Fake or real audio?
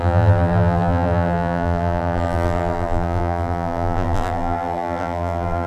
fake